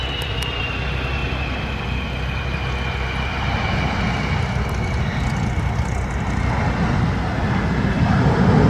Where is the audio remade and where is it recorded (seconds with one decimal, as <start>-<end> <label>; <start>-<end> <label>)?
0.0-0.6 remade; 0.6-8.7 recorded